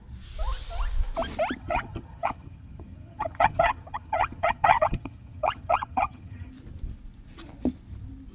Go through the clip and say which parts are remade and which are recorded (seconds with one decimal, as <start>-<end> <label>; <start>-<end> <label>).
0.0-1.6 recorded; 1.6-6.5 remade; 6.5-8.3 recorded